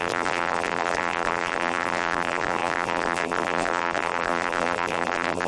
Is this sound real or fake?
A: fake